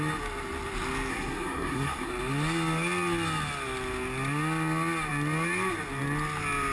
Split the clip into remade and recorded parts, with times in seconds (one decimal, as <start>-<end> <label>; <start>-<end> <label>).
0.0-1.1 recorded; 1.1-2.1 remade; 2.1-6.7 recorded